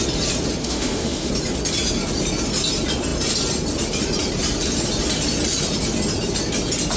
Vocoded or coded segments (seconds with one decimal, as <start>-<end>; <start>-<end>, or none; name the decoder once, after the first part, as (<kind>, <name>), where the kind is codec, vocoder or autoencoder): 0.6-1.3 (autoencoder, DAC-VAE)